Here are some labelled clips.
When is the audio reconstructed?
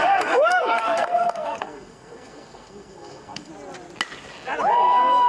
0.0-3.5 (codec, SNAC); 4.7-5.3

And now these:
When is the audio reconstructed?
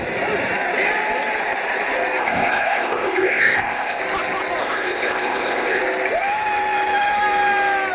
2.2-4.0 (codec, ZipCodec); 4.6-5.8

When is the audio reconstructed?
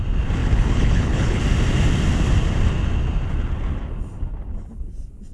0.4-1.4 (codec, HILCodec)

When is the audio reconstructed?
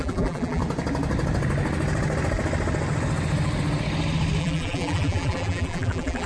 0.0-0.6 (vocoder, BigVGAN v2); 4.4-6.3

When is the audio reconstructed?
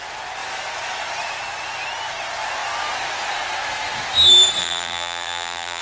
4.6-5.8 (vocoder, BigVGAN v2)